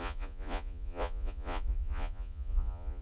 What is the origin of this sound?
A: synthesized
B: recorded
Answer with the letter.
A